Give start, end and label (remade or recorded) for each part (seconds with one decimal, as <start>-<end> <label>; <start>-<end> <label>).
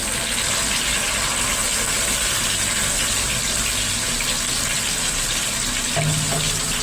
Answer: 0.0-6.8 recorded